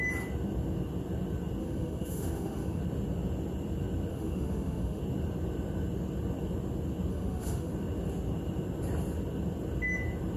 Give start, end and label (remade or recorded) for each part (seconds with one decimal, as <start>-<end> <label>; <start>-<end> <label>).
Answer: 0.0-1.6 recorded; 1.6-2.8 remade; 2.8-4.1 recorded; 4.1-5.0 remade; 5.0-7.1 recorded; 7.1-7.7 remade; 7.7-10.4 recorded